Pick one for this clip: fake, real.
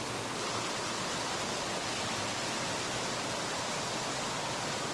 real